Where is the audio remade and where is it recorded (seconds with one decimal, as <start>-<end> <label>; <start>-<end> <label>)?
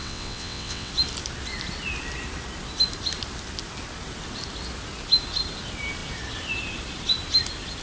0.0-0.9 remade; 0.9-7.8 recorded